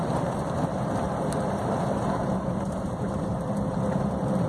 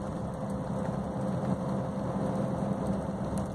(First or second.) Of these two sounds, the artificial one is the first